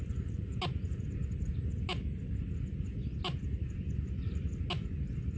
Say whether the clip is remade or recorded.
recorded